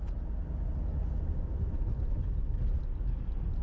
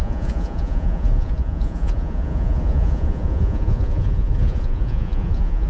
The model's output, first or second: second